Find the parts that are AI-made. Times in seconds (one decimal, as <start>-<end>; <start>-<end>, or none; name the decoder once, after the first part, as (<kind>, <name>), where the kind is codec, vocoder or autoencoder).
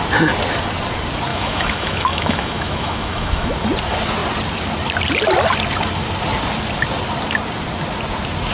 1.3-3.5 (autoencoder, DAC-VAE)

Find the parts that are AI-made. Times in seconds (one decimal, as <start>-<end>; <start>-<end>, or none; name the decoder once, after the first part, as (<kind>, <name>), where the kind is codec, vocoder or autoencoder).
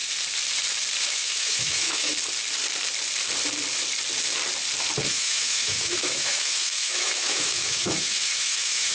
1.0-2.1 (autoencoder, DAC-VAE); 5.1-8.9